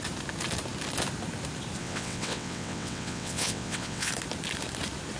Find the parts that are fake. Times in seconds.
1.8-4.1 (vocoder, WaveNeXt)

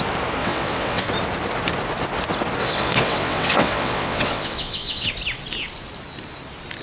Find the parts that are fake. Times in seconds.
0.4-1.1 (vocoder, WaveNeXt); 2.6-5.1

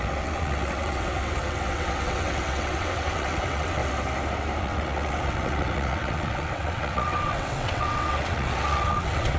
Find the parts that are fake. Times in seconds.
0.0-3.8 (vocoder, WaveNeXt); 4.6-9.4

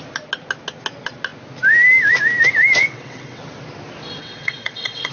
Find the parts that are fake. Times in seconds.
2.8-3.4 (vocoder, WaveNeXt); 4.2-5.1

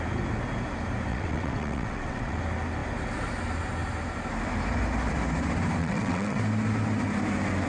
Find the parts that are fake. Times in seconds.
1.1-2.4 (vocoder, WaveNeXt); 5.8-6.4